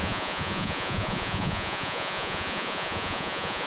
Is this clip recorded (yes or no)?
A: no